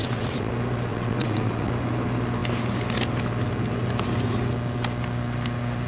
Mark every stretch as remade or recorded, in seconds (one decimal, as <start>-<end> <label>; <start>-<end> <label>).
0.0-0.5 remade; 0.5-0.9 recorded; 0.9-1.7 remade; 1.7-5.9 recorded